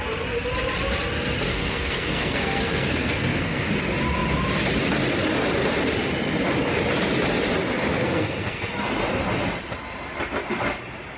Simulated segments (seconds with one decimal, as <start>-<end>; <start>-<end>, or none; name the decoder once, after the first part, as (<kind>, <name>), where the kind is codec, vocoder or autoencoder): 1.5-3.7 (codec, SNAC); 7.9-8.7